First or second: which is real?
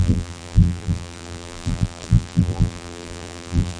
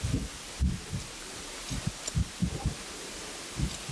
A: second